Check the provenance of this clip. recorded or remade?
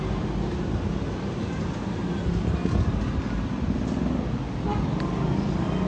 recorded